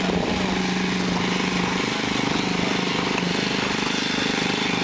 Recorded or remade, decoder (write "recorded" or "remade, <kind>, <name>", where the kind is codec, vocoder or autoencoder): recorded